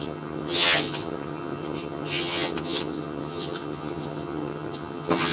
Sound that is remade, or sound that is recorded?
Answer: remade